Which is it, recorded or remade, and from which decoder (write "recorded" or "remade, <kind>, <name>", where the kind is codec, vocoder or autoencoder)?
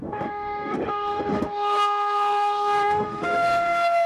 remade, autoencoder, DAC-VAE